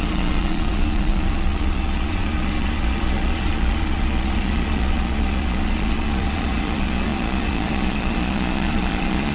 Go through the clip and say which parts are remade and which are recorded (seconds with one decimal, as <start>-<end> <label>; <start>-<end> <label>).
0.0-9.3 remade